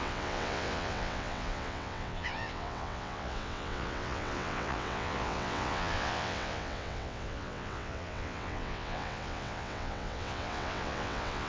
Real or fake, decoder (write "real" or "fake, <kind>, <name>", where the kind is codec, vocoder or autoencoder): fake, vocoder, WaveNeXt